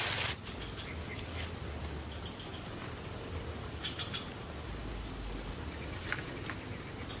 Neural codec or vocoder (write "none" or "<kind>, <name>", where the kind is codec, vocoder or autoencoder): none